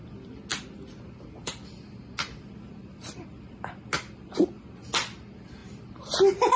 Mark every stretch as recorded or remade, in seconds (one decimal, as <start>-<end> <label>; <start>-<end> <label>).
0.0-6.6 recorded